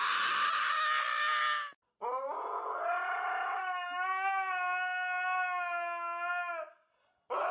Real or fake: real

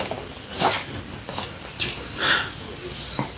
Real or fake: real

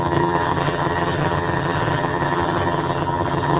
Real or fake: fake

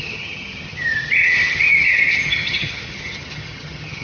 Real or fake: fake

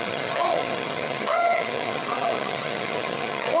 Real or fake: fake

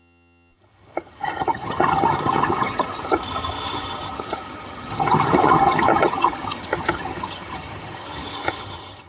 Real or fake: fake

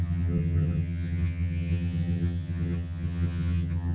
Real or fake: fake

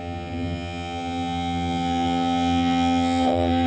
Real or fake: fake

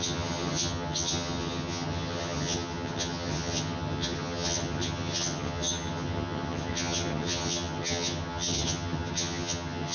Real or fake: fake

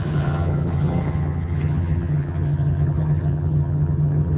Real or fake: fake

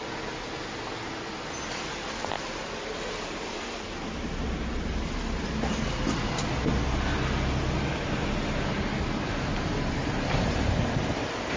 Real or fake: real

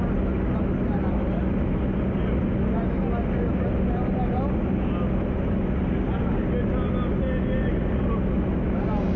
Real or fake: real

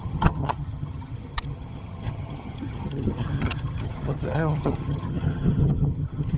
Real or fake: fake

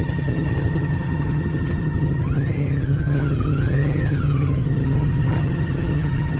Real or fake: fake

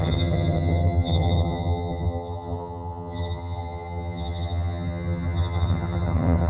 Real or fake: fake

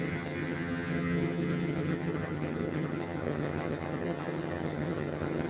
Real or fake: fake